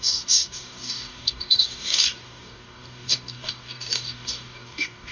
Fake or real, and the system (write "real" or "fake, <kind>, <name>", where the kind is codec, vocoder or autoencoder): fake, codec, DAC